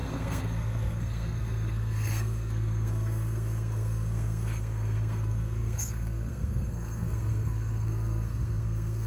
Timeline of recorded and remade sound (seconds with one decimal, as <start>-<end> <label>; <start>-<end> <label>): 0.0-9.1 remade